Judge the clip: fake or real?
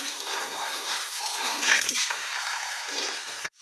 fake